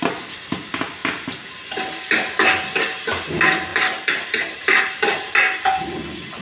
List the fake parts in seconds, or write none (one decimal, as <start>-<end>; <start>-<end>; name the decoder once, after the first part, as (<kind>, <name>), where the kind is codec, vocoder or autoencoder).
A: 3.7-5.3 (vocoder, BigVGAN v2)